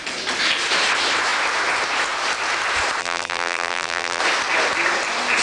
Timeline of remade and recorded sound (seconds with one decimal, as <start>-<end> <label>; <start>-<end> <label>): 0.0-3.0 recorded; 3.0-4.2 remade; 4.2-5.4 recorded